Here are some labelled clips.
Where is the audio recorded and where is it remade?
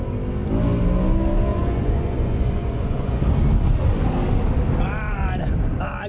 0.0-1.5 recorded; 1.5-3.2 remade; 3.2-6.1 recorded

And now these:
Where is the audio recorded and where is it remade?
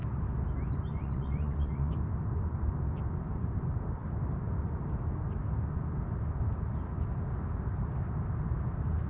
0.0-0.9 recorded; 0.9-1.9 remade; 1.9-9.1 recorded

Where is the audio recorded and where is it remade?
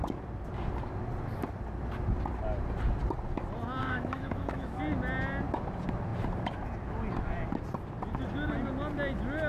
0.0-3.8 recorded; 3.8-4.8 remade; 4.8-9.5 recorded